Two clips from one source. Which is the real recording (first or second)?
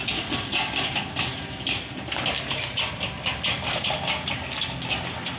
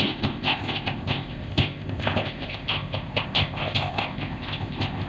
first